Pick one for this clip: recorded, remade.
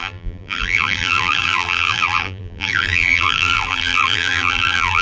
remade